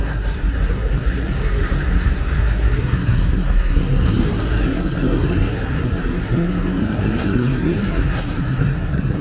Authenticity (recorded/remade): remade